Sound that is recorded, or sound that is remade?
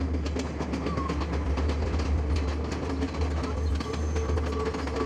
recorded